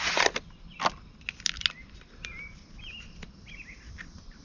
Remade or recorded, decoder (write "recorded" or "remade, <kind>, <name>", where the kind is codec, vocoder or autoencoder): recorded